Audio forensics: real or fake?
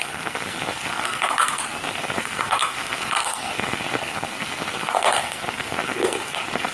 fake